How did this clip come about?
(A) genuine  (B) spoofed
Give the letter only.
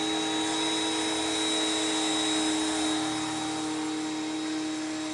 A